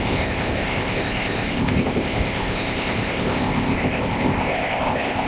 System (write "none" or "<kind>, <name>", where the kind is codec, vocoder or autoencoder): codec, ZipCodec